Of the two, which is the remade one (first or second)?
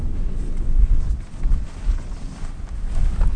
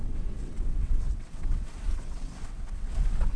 second